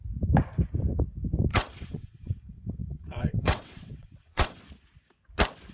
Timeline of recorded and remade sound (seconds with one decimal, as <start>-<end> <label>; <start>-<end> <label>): 0.0-1.5 recorded; 1.5-4.6 remade; 4.6-5.7 recorded